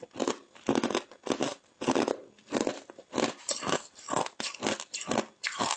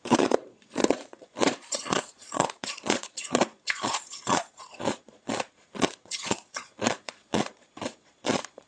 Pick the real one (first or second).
first